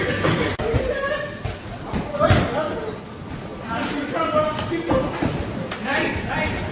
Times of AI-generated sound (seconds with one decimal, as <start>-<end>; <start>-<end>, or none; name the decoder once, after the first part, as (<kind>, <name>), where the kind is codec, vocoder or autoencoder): none